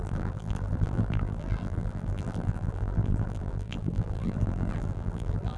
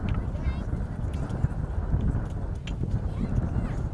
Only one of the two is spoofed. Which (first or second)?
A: first